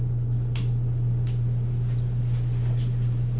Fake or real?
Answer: real